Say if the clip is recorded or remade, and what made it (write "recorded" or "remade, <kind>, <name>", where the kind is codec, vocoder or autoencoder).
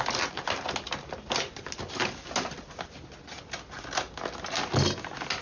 recorded